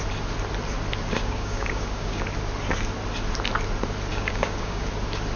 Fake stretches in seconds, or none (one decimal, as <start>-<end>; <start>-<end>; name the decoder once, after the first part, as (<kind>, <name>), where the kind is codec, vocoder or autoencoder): 1.2-2.2 (codec, DAC); 4.1-4.9